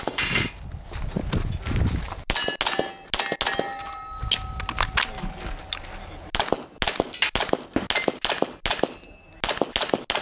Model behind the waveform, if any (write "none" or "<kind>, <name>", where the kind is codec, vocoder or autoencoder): none